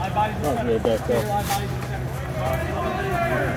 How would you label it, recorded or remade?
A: recorded